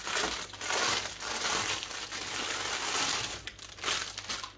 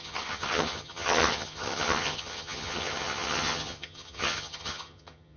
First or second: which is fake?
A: second